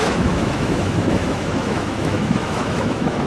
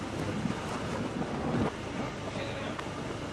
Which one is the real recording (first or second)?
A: second